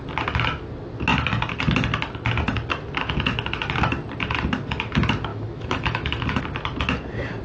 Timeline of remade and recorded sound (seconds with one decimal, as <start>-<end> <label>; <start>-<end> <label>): 0.0-5.3 recorded; 5.3-6.4 remade; 6.4-7.4 recorded